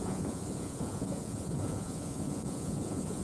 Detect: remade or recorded remade